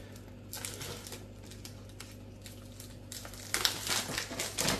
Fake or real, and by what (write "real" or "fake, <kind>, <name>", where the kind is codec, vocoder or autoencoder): real